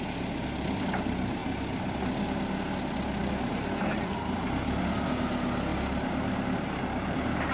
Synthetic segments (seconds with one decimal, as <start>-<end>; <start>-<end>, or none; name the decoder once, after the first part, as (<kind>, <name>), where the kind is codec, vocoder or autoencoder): none